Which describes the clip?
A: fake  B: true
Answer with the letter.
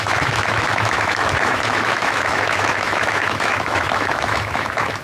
A